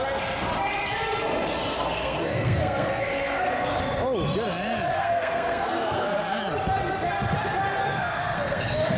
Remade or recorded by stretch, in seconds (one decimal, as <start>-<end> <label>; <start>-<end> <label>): 0.0-1.7 recorded; 1.7-3.8 remade; 3.8-5.0 recorded; 5.0-6.4 remade; 6.4-7.8 recorded; 7.8-9.0 remade